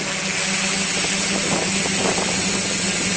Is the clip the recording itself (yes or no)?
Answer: yes